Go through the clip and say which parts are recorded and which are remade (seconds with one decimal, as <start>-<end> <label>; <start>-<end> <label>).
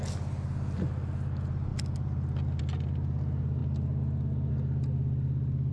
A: 0.0-5.7 recorded